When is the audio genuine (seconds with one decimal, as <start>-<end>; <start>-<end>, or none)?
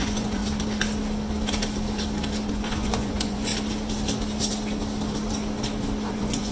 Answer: 0.4-2.5; 3.5-6.1